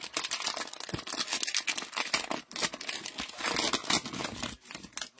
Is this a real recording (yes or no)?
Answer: yes